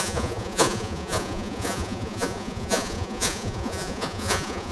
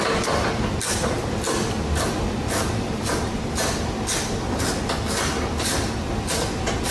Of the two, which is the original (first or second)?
second